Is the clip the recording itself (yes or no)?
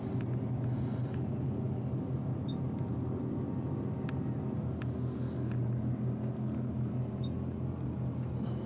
yes